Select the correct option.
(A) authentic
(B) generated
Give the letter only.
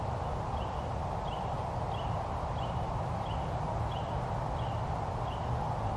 A